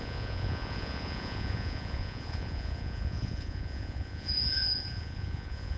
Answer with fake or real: fake